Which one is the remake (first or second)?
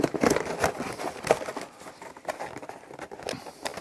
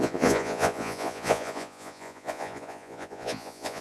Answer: second